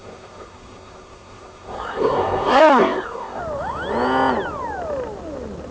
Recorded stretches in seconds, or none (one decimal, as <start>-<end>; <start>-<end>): 3.4-5.7